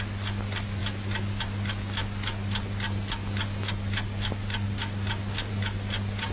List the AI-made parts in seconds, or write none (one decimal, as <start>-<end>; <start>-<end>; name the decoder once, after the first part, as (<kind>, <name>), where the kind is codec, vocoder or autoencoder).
none